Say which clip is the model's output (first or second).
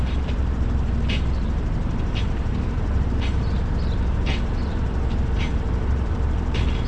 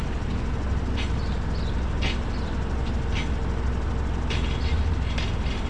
first